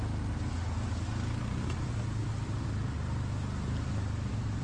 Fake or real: real